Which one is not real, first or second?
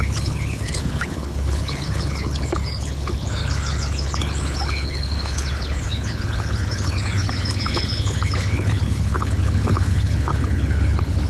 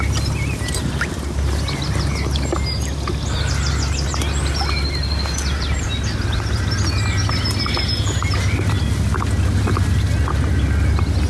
first